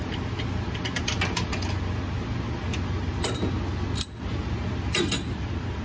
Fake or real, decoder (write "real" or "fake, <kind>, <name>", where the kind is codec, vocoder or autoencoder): real